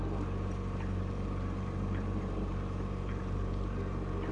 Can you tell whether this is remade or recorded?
remade